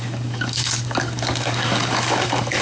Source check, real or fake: fake